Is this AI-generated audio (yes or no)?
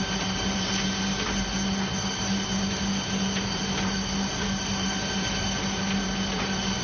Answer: no